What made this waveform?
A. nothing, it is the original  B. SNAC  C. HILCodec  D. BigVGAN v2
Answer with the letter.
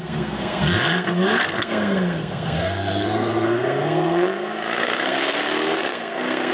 B